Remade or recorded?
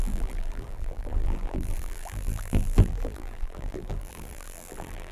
remade